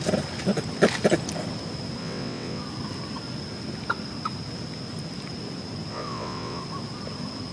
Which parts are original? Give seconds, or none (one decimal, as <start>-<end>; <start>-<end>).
0.0-2.0; 2.6-5.9; 6.6-7.5